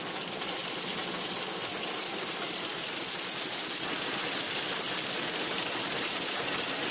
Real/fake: real